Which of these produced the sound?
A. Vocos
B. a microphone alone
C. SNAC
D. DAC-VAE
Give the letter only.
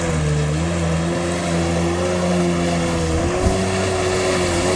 B